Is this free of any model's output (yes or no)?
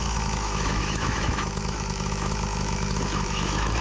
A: no